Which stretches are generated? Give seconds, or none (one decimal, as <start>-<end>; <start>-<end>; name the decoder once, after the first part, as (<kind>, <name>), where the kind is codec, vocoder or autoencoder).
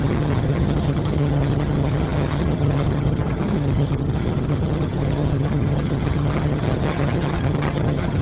0.0-8.2 (vocoder, HiFi-GAN)